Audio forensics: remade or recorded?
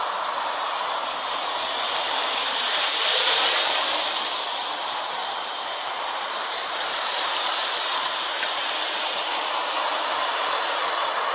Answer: remade